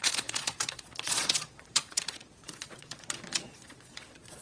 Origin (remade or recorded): remade